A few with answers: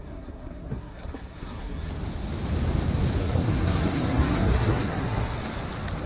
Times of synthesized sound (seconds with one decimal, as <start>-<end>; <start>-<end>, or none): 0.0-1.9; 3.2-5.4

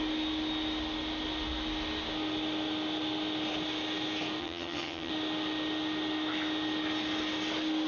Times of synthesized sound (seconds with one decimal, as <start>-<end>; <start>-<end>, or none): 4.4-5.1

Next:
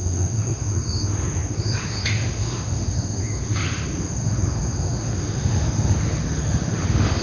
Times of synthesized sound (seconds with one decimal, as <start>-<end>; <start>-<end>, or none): 0.0-7.2